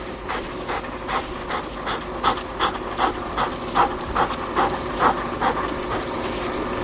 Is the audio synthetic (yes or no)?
no